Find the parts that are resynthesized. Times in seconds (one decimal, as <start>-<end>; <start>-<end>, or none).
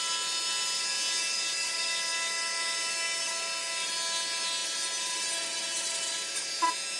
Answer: none